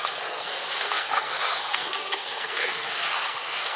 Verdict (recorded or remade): remade